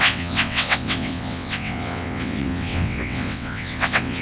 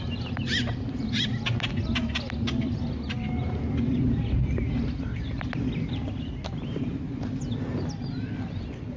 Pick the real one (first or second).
second